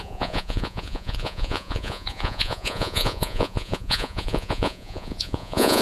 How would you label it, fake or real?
fake